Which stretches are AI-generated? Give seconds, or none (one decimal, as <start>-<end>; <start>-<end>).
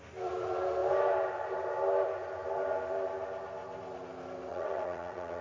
4.5-5.4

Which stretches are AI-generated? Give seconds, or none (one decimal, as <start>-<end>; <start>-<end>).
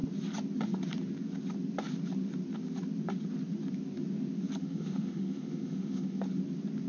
4.6-6.2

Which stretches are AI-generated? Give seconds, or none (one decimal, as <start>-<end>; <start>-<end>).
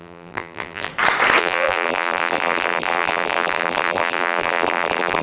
0.0-0.9; 1.4-5.2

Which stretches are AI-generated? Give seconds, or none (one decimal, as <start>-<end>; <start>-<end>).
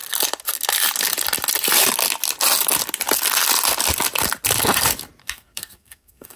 5.2-6.4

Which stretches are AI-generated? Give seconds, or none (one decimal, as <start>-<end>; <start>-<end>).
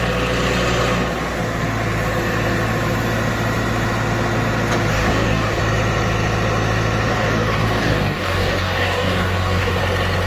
4.9-5.6; 7.1-9.8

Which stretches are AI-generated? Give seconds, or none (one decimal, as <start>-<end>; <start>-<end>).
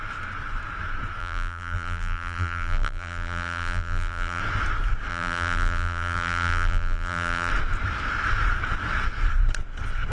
1.2-4.4; 5.1-7.5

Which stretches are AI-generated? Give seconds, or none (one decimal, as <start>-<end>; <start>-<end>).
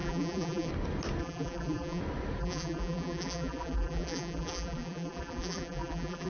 0.0-0.7; 1.2-2.0; 2.4-6.3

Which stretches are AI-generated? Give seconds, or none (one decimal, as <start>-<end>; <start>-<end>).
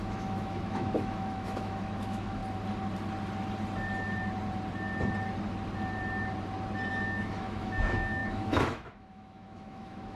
0.0-2.4; 6.9-10.2